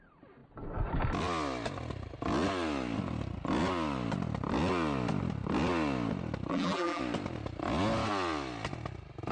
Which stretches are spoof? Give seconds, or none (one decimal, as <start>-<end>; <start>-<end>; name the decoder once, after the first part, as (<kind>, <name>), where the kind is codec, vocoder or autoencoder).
6.5-7.0 (vocoder, BigVGAN v2)